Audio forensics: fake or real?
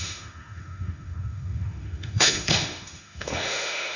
fake